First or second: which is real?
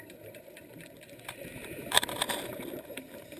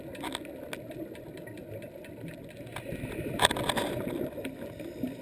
second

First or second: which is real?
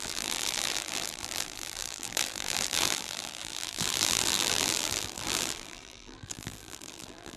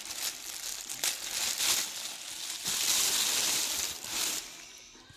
second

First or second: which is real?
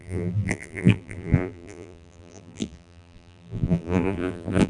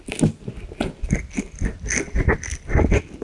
second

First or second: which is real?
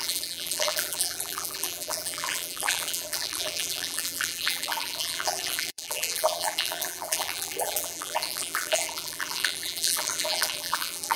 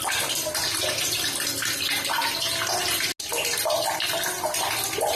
second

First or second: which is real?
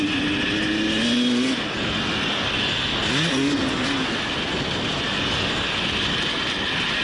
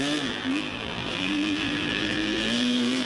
first